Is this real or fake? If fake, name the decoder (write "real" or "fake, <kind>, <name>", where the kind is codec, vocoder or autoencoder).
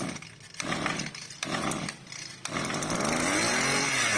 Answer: real